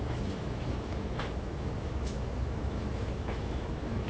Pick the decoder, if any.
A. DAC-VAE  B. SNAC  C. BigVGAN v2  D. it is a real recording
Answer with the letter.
A